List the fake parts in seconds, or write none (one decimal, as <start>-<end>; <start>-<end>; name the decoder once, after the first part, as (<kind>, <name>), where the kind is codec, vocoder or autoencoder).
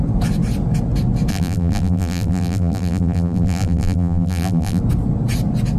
1.3-4.8 (vocoder, BigVGAN v2)